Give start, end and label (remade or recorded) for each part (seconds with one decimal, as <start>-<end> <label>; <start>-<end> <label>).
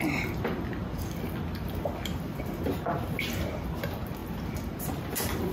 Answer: 0.0-5.5 recorded